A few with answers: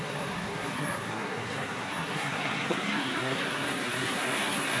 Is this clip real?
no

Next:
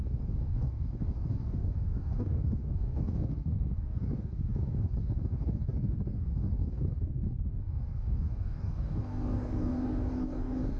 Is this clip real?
no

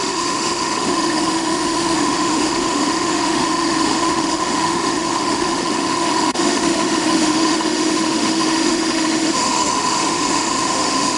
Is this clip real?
no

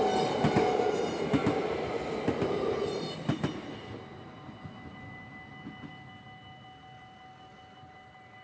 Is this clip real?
yes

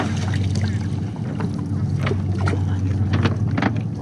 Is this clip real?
yes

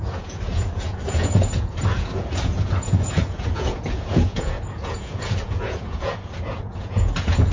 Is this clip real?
no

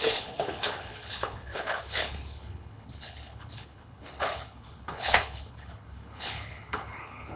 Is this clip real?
no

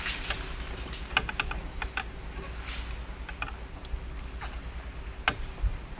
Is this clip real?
yes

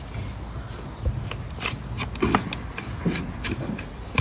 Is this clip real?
yes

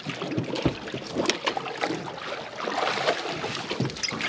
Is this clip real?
yes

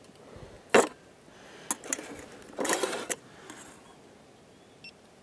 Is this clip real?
yes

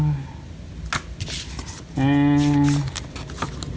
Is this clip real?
yes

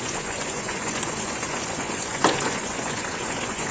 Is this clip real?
no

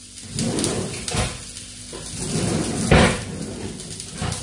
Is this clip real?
yes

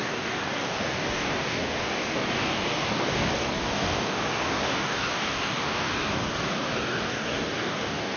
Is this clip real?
no